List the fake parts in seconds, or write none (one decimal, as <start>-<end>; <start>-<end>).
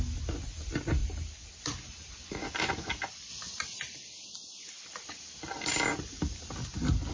3.3-3.8; 4.9-5.7